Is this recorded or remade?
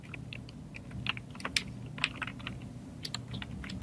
recorded